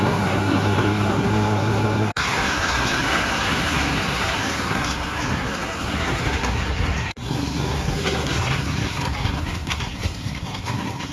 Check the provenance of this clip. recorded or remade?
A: remade